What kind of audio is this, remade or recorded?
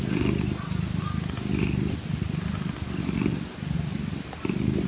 recorded